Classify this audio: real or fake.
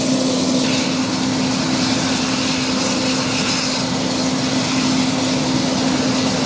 real